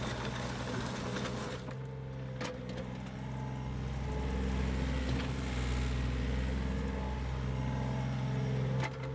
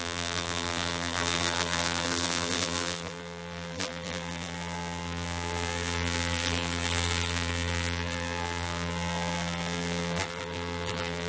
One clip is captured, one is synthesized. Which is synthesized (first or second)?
second